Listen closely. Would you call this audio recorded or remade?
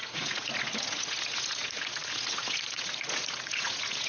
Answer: remade